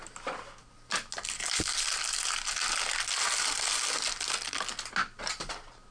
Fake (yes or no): no